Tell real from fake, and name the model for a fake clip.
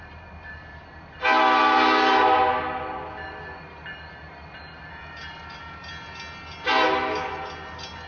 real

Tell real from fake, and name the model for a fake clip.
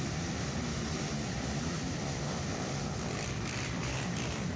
real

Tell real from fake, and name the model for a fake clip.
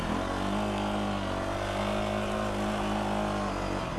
real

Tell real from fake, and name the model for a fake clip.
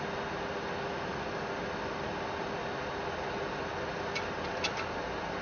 real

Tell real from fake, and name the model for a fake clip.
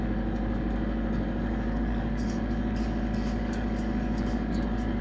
fake, codec, DAC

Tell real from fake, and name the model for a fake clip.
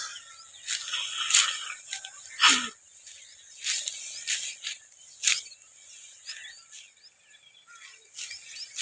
real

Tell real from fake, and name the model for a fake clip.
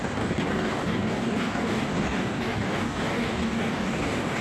fake, codec, DAC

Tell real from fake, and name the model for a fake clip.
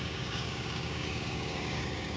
fake, codec, DAC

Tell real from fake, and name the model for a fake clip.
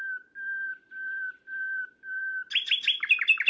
real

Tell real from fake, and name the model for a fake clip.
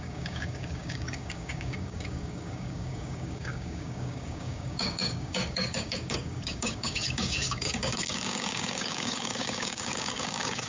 fake, codec, DAC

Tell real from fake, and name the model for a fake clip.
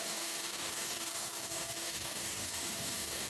fake, codec, DAC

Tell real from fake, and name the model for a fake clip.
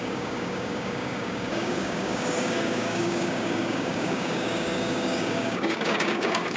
fake, codec, DAC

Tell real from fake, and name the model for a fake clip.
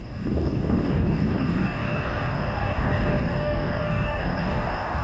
fake, codec, DAC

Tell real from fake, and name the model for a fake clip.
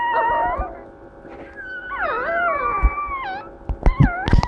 real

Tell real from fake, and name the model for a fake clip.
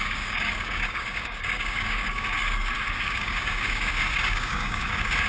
fake, codec, DAC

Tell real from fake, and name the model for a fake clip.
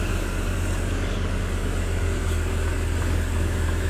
fake, codec, DAC